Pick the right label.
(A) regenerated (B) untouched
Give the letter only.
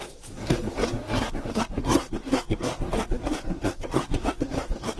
A